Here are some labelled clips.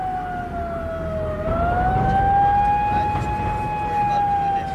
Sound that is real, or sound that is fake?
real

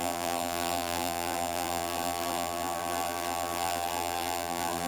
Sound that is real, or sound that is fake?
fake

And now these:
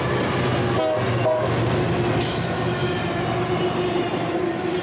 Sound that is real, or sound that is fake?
real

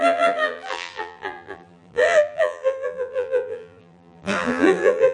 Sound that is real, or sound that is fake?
fake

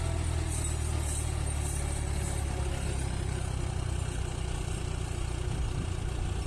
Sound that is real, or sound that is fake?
real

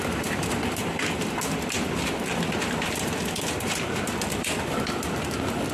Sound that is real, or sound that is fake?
fake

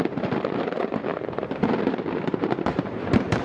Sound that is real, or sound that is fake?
fake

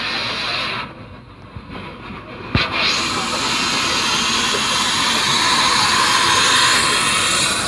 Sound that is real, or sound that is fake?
real